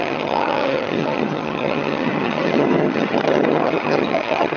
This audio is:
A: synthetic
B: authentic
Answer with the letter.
A